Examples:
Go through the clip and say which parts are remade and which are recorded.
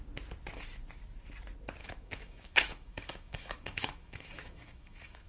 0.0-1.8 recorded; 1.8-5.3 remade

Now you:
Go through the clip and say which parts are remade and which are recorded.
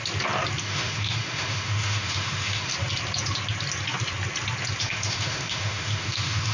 0.0-0.6 recorded; 0.6-2.7 remade; 2.7-4.8 recorded; 4.8-6.5 remade